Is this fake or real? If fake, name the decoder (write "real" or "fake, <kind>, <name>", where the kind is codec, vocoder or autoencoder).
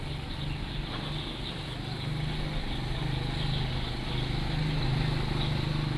real